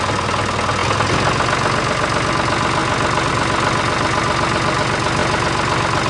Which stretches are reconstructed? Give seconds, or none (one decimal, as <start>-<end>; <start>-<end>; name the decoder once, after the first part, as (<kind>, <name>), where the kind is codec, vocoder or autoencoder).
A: none